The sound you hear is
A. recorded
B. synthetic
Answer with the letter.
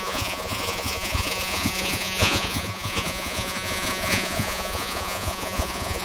B